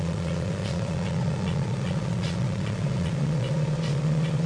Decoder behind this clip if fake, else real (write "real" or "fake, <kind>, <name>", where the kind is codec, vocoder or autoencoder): fake, vocoder, Vocos